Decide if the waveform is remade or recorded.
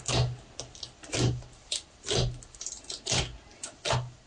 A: recorded